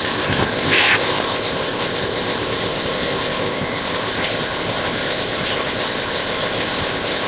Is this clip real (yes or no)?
no